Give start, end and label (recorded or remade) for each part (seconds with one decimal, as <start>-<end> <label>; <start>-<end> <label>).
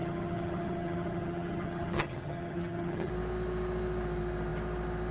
0.0-3.1 remade; 3.1-5.1 recorded